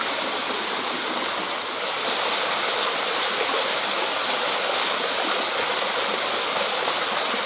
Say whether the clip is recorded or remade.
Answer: recorded